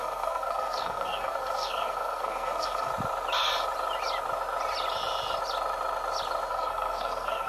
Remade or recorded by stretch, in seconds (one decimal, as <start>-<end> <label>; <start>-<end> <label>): 0.0-2.9 remade; 2.9-6.5 recorded; 6.5-7.5 remade